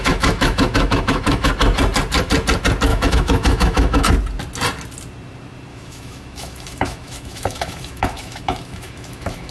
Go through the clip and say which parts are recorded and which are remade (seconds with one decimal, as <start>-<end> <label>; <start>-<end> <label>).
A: 0.0-1.5 remade; 1.5-2.9 recorded; 2.9-4.1 remade; 4.1-5.7 recorded; 5.7-9.5 remade